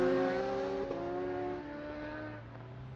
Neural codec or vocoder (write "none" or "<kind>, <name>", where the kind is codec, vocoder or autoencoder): none